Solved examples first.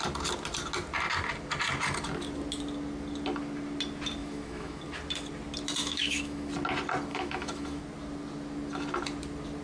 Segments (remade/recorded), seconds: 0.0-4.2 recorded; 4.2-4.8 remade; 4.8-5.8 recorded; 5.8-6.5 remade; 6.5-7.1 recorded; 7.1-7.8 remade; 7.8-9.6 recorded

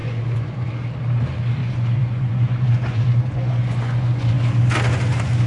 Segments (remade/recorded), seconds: 0.0-0.7 remade; 0.7-1.6 recorded; 1.6-4.3 remade; 4.3-5.5 recorded

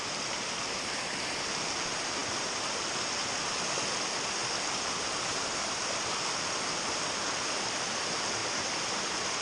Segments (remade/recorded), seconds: 0.0-2.2 recorded; 2.2-3.2 remade; 3.2-4.4 recorded; 4.4-8.0 remade; 8.0-8.4 recorded; 8.4-9.4 remade

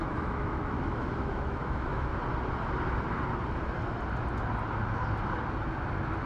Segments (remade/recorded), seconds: 0.0-2.1 remade; 2.1-6.3 recorded